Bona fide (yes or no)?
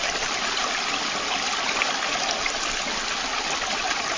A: yes